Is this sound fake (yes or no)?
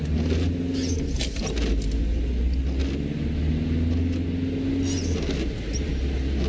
no